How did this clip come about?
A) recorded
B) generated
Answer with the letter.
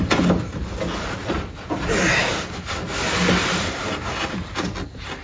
A